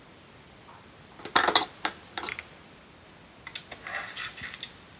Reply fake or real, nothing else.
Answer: real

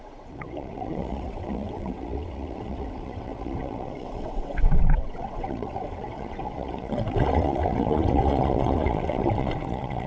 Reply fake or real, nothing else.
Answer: fake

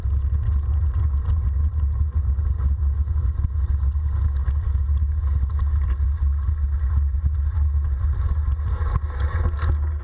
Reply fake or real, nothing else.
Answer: real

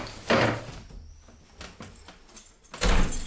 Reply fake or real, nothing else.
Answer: real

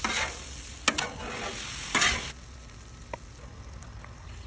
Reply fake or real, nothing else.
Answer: real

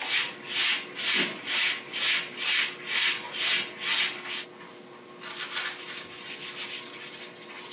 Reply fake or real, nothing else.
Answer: real